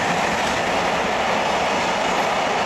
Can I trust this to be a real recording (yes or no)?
yes